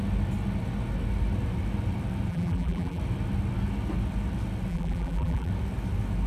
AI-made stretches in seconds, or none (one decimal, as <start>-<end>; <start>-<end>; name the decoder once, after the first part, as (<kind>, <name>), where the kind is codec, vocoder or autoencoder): 2.3-3.0 (vocoder, BigVGAN v2); 4.7-5.5